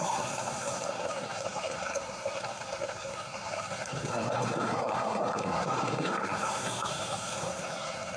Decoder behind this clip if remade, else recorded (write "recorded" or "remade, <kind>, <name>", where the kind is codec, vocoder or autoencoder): remade, codec, SNAC